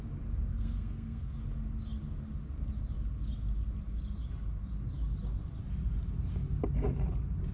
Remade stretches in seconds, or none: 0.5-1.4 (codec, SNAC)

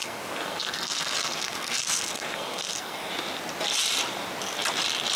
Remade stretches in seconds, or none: 0.0-3.1 (codec, SNAC)

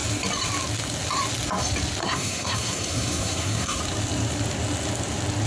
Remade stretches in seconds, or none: 2.0-3.8 (codec, SNAC)

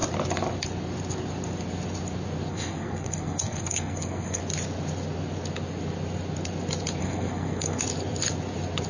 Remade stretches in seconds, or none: 2.5-4.4 (codec, SNAC); 7.0-7.8

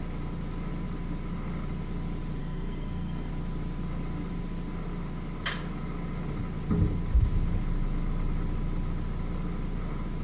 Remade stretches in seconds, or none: 2.4-3.3 (codec, SNAC)

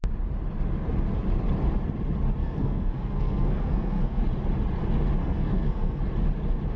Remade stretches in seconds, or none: 2.4-4.2 (codec, SNAC); 5.2-6.0

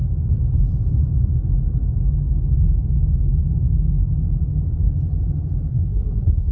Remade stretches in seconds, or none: 5.7-6.5 (codec, SNAC)

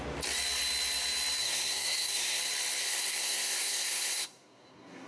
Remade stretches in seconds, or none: 1.4-2.4 (codec, SNAC); 2.8-5.1